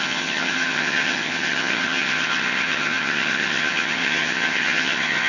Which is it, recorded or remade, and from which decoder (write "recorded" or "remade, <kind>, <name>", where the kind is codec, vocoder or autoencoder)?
remade, vocoder, HiFi-GAN